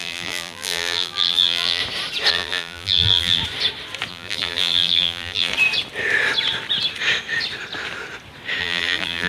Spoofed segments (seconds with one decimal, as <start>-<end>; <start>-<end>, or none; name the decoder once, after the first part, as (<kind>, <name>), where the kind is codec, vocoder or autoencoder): 0.0-1.8 (vocoder, BigVGAN v2); 2.3-3.4; 4.1-5.5; 8.6-9.3